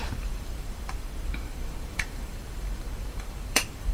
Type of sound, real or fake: fake